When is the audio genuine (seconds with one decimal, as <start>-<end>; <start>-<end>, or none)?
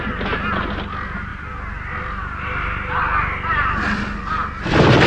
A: 0.0-5.1